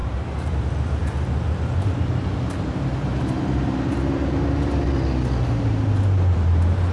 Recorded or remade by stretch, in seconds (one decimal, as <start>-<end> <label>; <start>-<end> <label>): 0.0-6.9 recorded